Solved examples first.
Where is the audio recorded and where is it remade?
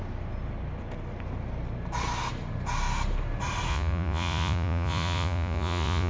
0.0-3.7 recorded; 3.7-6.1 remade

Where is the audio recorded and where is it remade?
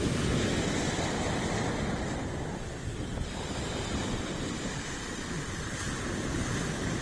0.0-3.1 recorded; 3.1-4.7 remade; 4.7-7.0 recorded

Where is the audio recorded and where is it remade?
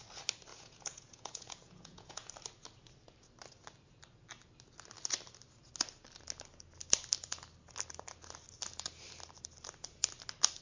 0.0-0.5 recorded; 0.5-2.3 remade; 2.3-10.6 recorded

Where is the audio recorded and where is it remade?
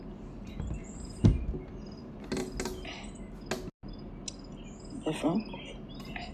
0.0-0.8 recorded; 0.8-1.5 remade; 1.5-6.3 recorded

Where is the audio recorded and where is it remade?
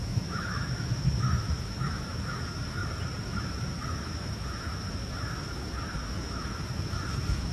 0.0-2.8 remade; 2.8-3.4 recorded; 3.4-7.5 remade